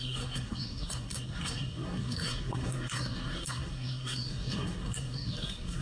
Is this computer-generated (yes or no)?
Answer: yes